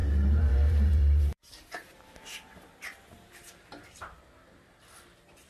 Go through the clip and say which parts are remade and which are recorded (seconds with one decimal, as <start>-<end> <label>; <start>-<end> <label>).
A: 0.0-3.3 remade; 3.3-5.5 recorded